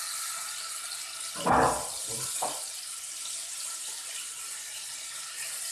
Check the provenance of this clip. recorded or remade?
recorded